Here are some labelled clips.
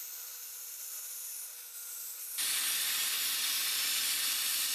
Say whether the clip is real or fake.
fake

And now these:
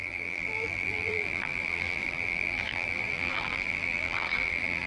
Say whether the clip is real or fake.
fake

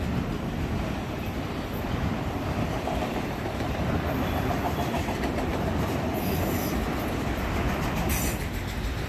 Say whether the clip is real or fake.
fake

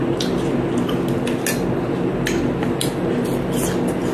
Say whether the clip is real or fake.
real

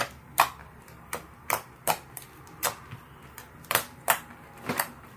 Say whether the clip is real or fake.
fake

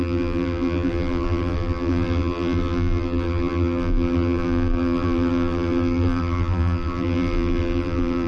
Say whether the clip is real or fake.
fake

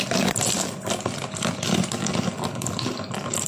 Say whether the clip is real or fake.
real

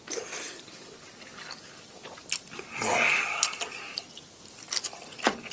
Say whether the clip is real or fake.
real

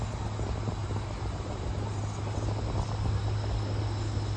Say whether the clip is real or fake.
real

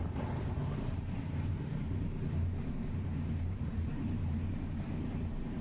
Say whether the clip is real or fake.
fake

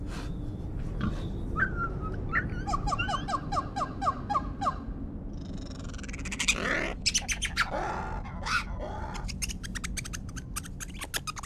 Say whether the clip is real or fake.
real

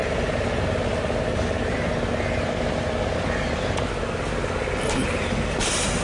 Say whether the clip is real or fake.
real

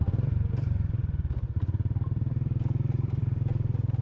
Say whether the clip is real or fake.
fake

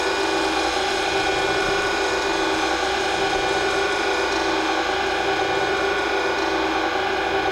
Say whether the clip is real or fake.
real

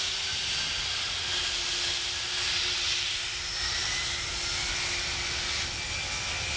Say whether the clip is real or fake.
real